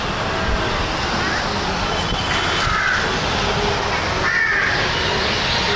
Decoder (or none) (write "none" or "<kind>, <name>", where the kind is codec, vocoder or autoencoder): none